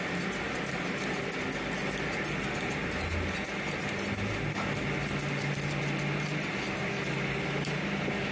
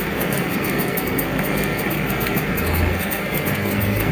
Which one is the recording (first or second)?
first